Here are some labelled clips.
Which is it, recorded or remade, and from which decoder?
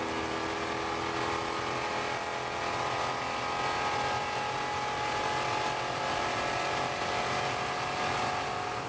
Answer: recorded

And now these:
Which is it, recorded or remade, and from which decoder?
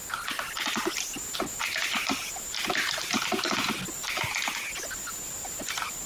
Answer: recorded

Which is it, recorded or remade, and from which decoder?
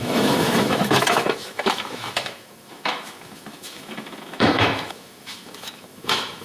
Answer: remade, autoencoder, DAC-VAE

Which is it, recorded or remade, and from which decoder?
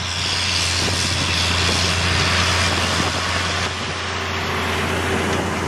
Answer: recorded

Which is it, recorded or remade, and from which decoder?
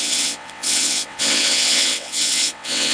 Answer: remade, vocoder, WaveNeXt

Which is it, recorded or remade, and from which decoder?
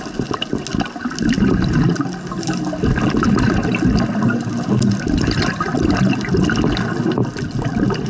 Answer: recorded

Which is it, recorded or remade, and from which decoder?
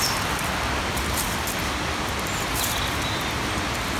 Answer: recorded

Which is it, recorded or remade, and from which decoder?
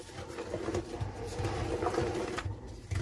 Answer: remade, vocoder, BigVGAN v2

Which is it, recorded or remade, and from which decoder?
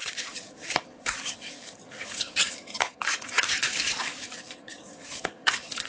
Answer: remade, codec, DAC